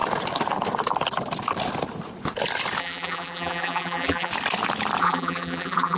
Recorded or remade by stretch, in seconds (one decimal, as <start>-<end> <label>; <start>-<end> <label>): 0.0-2.8 recorded; 2.8-4.3 remade; 4.3-5.0 recorded; 5.0-6.0 remade